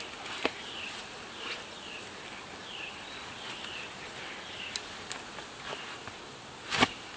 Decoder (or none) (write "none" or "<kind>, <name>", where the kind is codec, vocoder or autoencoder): none